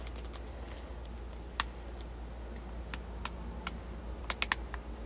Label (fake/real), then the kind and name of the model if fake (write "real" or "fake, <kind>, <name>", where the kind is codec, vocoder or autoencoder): real